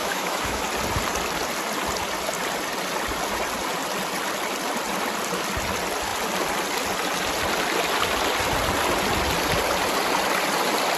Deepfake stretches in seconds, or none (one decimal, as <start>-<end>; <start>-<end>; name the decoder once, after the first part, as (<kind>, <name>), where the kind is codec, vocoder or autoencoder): 0.0-0.6 (autoencoder, DAC-VAE)